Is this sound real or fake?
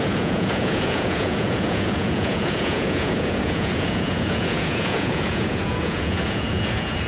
fake